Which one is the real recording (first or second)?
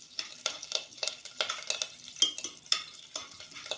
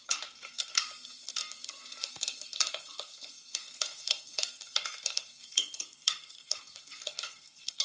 first